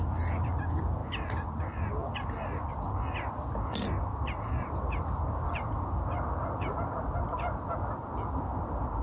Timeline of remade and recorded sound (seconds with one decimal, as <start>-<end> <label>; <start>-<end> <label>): 0.0-9.0 recorded